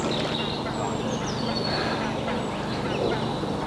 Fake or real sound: real